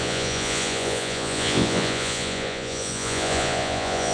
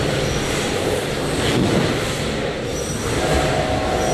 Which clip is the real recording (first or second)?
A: second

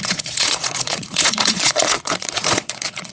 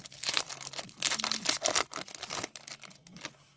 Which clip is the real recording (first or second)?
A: second